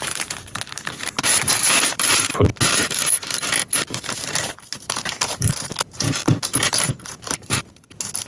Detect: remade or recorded remade